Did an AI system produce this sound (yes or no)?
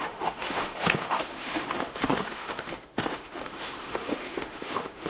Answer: yes